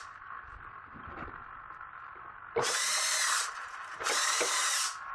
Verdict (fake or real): fake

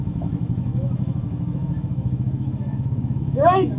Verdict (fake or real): fake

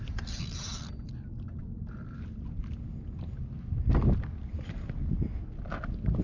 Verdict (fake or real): real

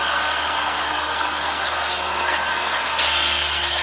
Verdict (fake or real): fake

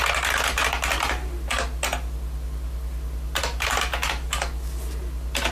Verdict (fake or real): real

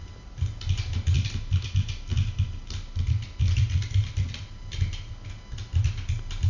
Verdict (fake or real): real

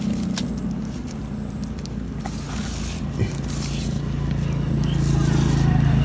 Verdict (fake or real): real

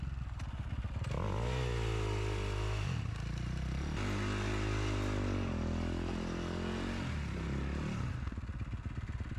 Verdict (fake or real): real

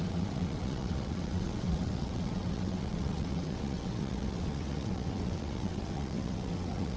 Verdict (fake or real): fake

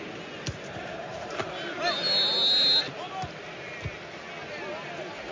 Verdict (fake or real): real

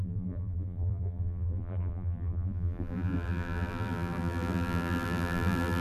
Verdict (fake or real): fake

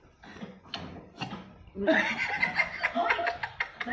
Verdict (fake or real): real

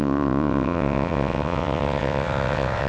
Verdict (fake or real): fake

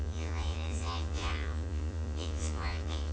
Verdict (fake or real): fake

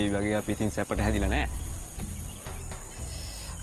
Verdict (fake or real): real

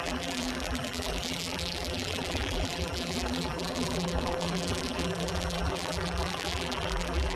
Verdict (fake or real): fake